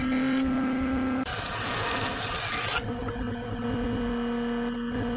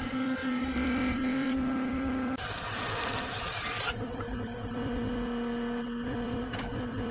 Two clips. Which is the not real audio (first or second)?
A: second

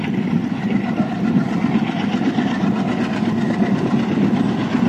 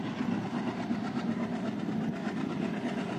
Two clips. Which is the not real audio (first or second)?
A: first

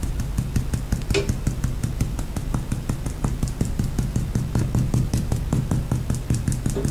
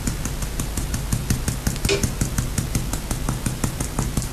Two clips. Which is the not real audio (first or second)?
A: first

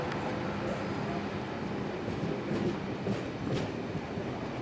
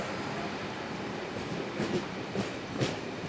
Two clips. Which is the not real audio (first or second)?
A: second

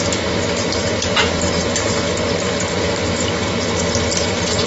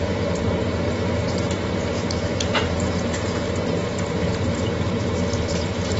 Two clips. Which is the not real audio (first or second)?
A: second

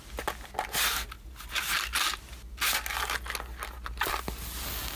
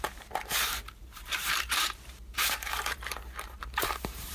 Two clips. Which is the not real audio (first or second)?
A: second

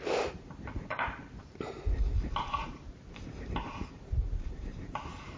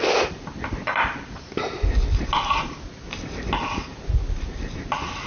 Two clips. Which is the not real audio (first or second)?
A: first